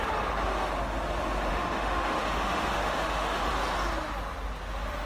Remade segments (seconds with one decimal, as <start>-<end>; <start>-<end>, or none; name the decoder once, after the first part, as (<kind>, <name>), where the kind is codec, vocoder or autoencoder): 1.5-3.5 (autoencoder, DAC-VAE)